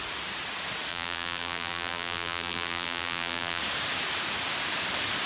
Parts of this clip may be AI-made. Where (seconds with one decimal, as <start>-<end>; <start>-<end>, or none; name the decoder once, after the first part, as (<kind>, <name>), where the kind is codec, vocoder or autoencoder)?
0.9-3.6 (vocoder, BigVGAN v2)